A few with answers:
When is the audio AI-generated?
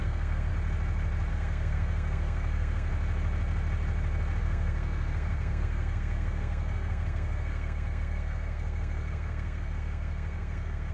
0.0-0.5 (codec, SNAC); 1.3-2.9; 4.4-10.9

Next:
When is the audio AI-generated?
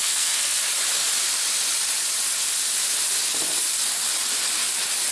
0.0-0.6 (codec, SNAC)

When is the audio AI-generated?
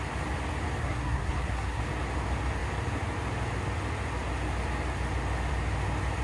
0.8-1.8 (codec, SNAC)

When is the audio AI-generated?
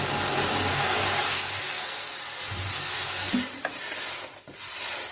0.7-2.1 (codec, SNAC); 2.8-3.3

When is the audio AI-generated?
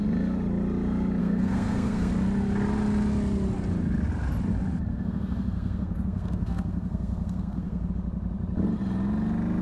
1.2-2.1 (codec, SNAC); 4.9-7.9